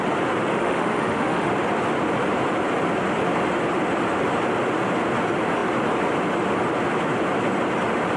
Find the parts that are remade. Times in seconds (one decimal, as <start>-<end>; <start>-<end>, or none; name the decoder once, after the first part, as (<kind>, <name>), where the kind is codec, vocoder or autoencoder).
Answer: 0.5-1.5 (autoencoder, DAC-VAE)